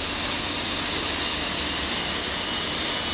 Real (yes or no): yes